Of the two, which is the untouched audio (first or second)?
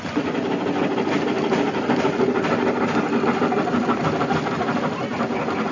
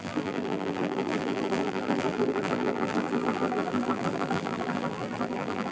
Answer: first